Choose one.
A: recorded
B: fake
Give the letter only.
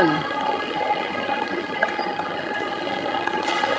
B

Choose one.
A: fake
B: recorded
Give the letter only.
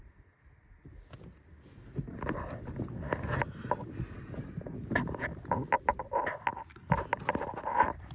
B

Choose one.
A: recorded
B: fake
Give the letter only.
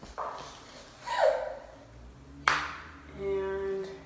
A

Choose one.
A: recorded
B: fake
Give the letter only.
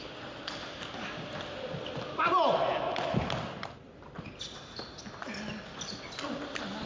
A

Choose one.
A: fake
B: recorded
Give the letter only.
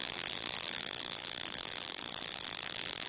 A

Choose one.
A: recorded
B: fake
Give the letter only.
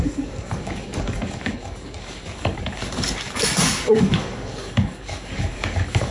B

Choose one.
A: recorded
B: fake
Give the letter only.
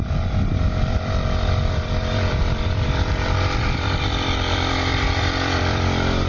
B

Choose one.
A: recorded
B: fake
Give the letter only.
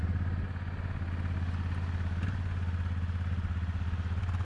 A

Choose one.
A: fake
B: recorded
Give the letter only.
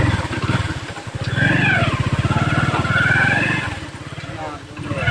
B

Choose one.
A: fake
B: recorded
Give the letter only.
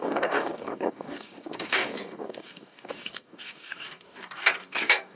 A